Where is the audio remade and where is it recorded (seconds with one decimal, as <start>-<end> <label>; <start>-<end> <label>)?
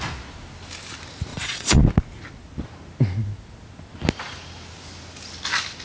0.0-1.3 recorded; 1.3-1.8 remade; 1.8-5.8 recorded